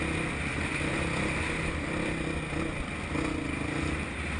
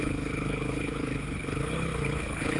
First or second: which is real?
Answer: first